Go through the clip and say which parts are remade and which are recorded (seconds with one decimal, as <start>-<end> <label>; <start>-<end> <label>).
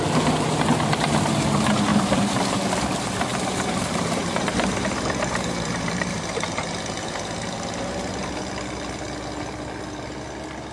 0.0-1.9 recorded; 1.9-2.7 remade; 2.7-3.3 recorded; 3.3-8.2 remade; 8.2-10.7 recorded